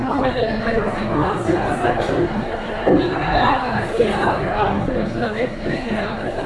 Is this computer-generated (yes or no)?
yes